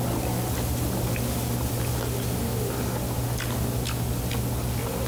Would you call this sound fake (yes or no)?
no